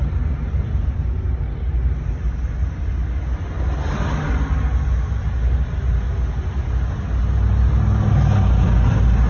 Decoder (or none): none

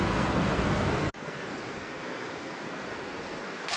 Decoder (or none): codec, SNAC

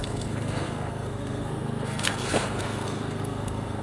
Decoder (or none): codec, SNAC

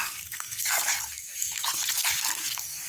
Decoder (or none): codec, SNAC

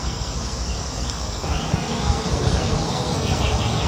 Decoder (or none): codec, SNAC